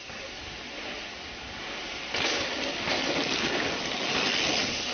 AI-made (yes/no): no